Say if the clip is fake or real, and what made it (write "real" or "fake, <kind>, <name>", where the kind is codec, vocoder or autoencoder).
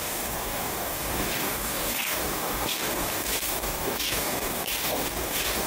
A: fake, codec, DAC